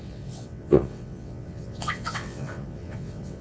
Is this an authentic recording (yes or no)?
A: no